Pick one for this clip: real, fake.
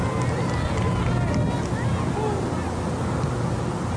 real